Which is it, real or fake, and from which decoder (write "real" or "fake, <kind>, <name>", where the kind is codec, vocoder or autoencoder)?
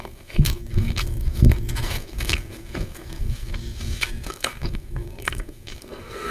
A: fake, codec, SNAC